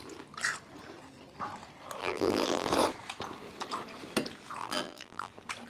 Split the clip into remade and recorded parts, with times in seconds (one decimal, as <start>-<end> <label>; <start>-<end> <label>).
0.0-2.0 recorded; 2.0-2.7 remade; 2.7-4.6 recorded; 4.6-5.3 remade; 5.3-5.7 recorded